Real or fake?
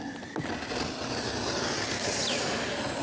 real